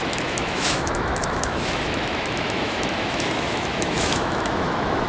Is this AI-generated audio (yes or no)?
yes